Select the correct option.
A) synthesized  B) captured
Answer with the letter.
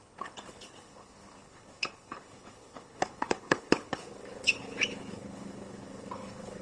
A